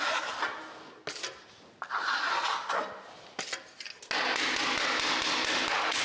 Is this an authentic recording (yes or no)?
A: yes